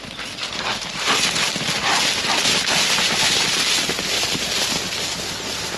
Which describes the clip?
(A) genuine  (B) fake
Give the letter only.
A